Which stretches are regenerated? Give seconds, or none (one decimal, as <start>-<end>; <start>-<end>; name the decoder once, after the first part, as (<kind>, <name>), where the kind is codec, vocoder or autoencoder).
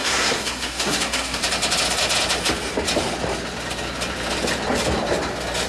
0.0-1.4 (codec, SNAC)